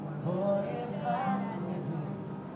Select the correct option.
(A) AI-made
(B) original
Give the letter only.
B